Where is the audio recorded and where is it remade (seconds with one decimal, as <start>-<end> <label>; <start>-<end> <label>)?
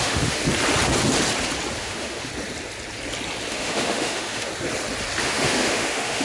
0.0-0.4 remade; 0.4-1.8 recorded; 1.8-2.3 remade; 2.3-3.5 recorded; 3.5-4.5 remade; 4.5-5.2 recorded; 5.2-6.2 remade